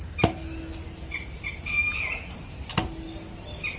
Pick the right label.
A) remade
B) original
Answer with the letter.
B